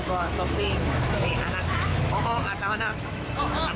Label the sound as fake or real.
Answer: fake